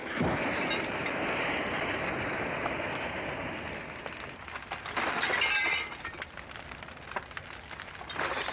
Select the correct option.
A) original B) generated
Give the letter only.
A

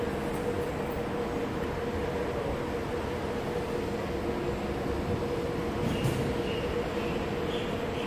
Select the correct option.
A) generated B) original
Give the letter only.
B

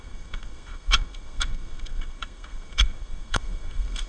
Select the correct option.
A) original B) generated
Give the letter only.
B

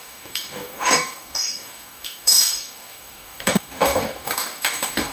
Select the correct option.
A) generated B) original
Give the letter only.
A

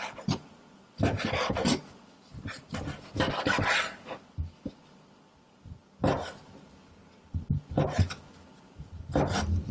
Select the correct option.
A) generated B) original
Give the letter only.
B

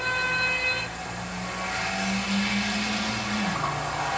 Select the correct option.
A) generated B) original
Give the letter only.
B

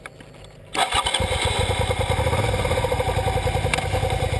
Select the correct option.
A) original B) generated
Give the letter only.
A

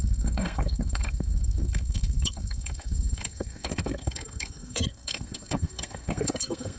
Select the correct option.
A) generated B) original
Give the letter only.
A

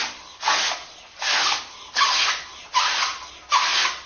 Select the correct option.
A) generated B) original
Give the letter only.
B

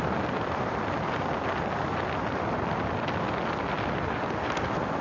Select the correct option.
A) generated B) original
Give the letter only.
B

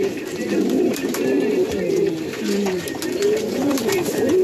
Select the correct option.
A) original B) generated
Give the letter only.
B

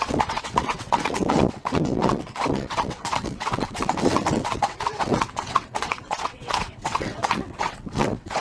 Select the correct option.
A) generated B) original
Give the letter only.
A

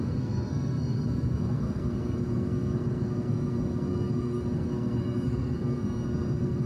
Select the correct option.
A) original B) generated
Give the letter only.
B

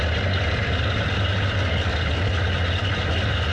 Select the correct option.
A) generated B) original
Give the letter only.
B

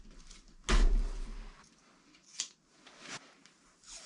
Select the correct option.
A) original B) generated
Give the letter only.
A